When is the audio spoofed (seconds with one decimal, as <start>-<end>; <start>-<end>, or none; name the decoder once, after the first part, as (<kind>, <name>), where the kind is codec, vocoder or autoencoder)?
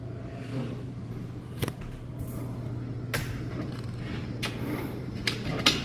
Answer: 0.5-1.8 (vocoder, BigVGAN v2); 3.5-5.8